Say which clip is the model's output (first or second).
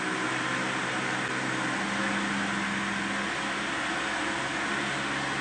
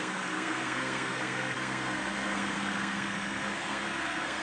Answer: second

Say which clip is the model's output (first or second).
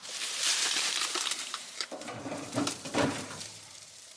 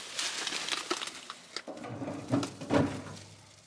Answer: first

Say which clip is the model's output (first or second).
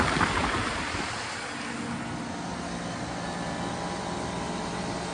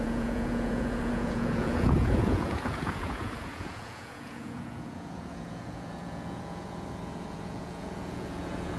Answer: second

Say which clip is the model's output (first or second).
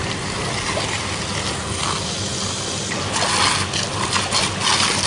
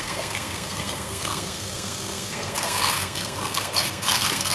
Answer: second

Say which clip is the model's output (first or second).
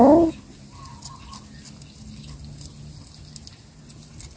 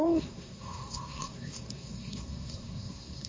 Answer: second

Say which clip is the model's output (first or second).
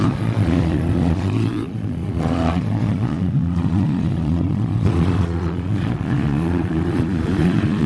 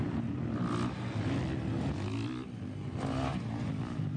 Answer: first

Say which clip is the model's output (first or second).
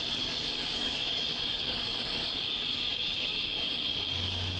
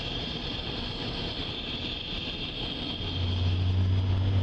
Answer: first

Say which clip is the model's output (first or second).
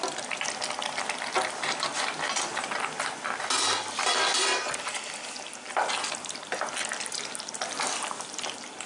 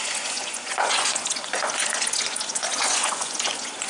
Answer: second